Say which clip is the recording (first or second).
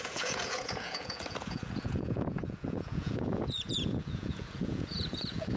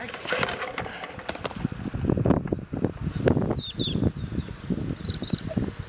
second